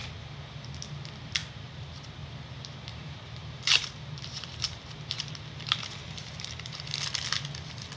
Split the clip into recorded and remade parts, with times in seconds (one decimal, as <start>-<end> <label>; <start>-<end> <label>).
0.0-1.4 recorded; 1.4-2.1 remade; 2.1-2.9 recorded; 2.9-6.3 remade; 6.3-8.0 recorded